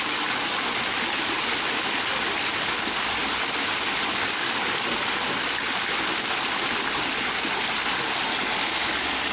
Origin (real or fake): real